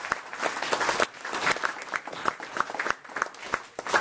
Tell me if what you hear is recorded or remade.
recorded